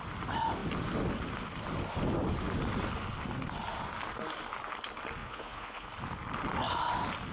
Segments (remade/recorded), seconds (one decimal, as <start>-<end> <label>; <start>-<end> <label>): 0.0-5.2 recorded; 5.2-5.9 remade; 5.9-7.3 recorded